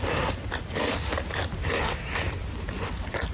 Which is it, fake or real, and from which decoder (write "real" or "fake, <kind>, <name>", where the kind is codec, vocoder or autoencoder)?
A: real